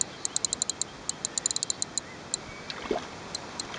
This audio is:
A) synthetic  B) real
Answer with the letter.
B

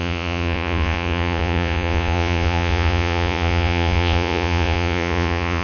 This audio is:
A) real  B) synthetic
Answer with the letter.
B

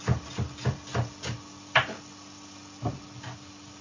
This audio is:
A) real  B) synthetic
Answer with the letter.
A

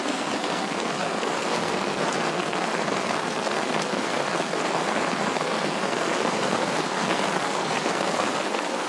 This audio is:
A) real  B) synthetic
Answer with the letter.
B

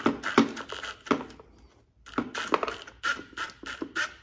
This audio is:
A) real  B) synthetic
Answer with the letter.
A